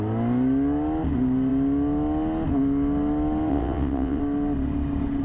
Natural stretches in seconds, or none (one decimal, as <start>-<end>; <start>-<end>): 0.0-3.5; 4.2-5.2